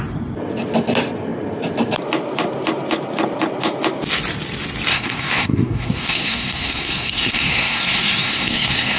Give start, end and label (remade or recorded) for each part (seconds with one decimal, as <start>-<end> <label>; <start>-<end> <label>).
0.0-4.9 recorded; 4.9-9.0 remade